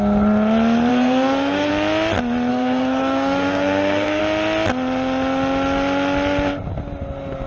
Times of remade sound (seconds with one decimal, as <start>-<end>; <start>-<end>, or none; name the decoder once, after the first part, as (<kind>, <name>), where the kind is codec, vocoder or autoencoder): 0.9-1.7 (codec, SNAC); 2.5-4.2